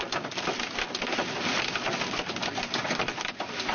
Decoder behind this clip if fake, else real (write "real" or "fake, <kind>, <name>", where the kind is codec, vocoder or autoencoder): real